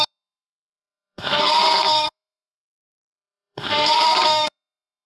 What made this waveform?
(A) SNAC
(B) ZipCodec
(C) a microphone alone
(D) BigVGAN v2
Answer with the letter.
A